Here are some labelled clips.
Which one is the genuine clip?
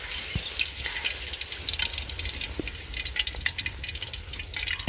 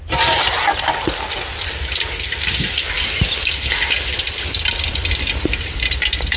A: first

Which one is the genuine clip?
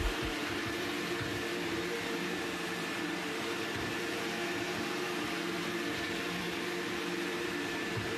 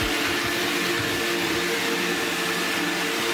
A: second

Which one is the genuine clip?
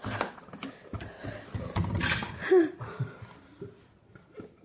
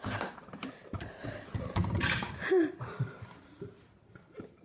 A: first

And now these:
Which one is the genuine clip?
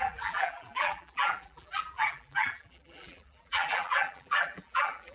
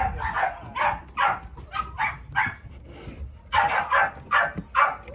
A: second